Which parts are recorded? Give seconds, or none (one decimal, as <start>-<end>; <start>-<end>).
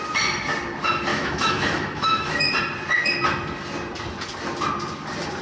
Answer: 0.0-1.1; 2.5-5.4